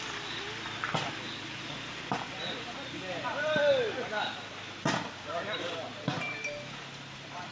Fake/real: fake